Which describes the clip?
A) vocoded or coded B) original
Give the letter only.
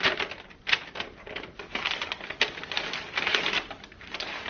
B